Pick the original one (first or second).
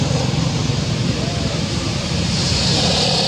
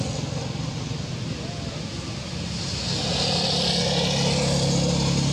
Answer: second